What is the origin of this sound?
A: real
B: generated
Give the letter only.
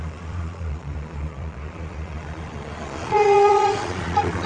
B